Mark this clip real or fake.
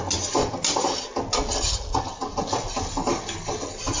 real